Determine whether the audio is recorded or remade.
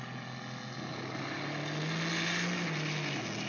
recorded